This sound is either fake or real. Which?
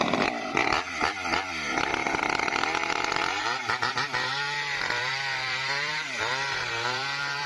fake